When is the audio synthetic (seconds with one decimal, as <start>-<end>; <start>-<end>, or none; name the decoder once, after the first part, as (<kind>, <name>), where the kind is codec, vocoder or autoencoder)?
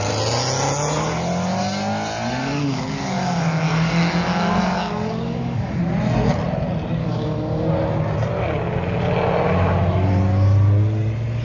2.4-5.8 (codec, DAC); 7.0-7.7